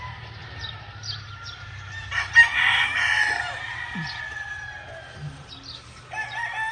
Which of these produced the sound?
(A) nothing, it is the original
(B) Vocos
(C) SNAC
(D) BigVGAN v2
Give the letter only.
A